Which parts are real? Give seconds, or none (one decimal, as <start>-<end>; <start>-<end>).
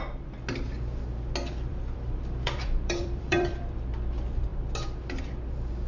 0.0-1.7; 3.8-5.9